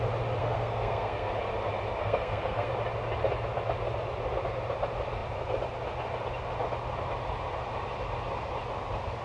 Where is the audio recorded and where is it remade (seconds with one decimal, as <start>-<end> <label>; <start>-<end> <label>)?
0.0-0.4 recorded; 0.4-1.3 remade; 1.3-2.0 recorded; 2.0-2.7 remade; 2.7-9.2 recorded